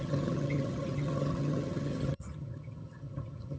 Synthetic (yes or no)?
yes